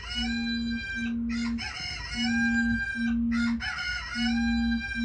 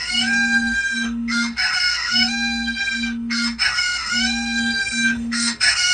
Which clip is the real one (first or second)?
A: first